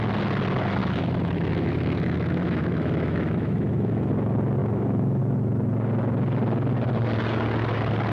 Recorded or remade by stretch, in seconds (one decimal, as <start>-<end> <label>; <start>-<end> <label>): 0.0-0.8 recorded; 0.8-4.1 remade; 4.1-4.6 recorded; 4.6-5.2 remade; 5.2-8.1 recorded